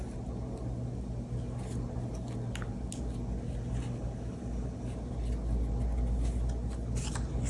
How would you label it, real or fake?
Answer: real